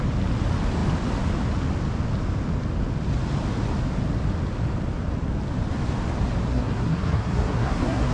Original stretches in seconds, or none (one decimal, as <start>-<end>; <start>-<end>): 0.0-6.5